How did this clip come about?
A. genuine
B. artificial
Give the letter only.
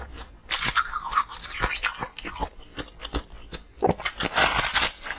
A